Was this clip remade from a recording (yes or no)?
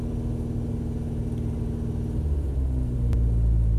no